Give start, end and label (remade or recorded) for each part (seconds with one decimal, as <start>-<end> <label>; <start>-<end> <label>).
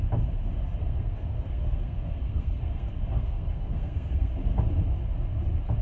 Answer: 0.0-0.8 recorded; 0.8-4.3 remade; 4.3-5.8 recorded